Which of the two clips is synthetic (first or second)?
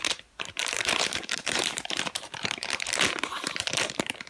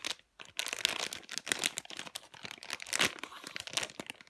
first